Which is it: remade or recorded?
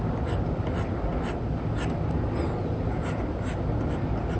recorded